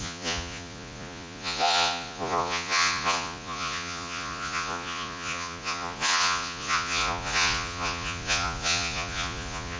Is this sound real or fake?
fake